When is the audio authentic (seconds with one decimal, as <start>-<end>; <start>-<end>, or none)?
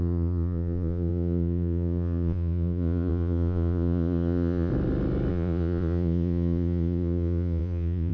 4.7-5.3